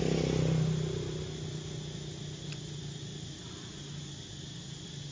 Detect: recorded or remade recorded